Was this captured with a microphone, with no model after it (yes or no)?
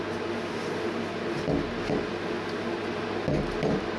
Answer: yes